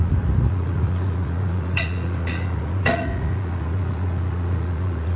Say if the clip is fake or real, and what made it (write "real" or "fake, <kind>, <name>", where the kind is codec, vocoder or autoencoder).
fake, vocoder, Vocos